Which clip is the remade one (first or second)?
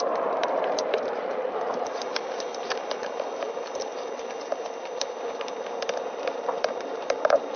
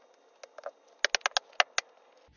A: first